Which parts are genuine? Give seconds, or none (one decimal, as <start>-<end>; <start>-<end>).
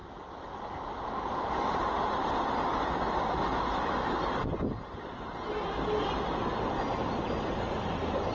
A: 0.0-8.3